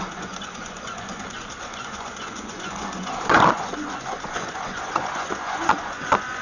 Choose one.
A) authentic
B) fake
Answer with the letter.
B